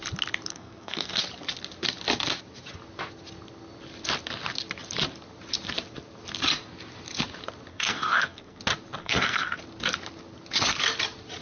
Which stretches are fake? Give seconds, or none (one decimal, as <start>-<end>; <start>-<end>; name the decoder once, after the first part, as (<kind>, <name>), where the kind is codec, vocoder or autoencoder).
0.5-1.2 (codec, SNAC); 7.7-8.6; 9.0-9.6